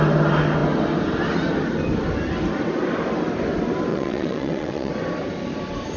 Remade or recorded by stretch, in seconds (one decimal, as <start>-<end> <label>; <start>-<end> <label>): 0.0-3.9 recorded; 3.9-4.9 remade; 4.9-6.0 recorded